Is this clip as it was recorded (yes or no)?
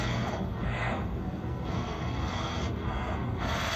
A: no